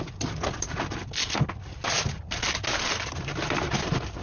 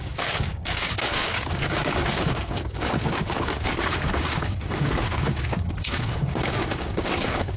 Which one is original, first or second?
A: first